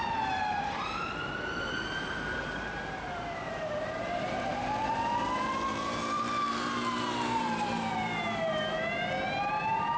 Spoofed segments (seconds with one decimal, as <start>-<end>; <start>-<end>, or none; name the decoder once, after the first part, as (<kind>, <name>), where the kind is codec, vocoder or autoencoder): 0.0-10.0 (vocoder, BigVGAN v2)